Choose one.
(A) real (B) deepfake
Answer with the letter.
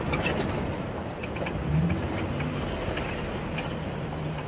B